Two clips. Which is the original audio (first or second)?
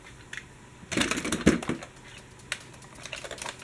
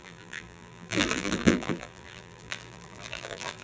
first